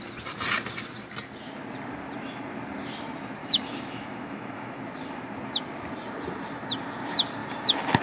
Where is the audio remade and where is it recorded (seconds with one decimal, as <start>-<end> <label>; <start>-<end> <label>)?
0.0-3.4 recorded; 3.4-4.8 remade; 4.8-8.0 recorded